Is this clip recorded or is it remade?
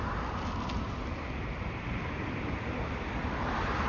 recorded